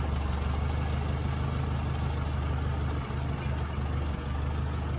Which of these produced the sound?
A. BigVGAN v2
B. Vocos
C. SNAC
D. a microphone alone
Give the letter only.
D